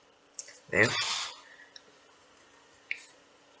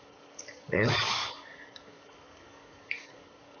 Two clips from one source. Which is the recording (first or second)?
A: first